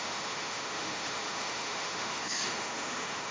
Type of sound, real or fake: fake